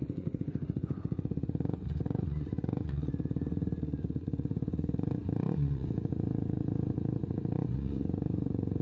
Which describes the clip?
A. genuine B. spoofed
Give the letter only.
B